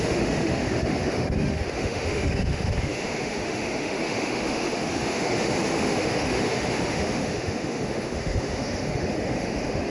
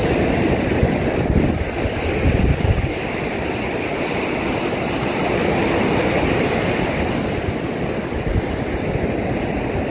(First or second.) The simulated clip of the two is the first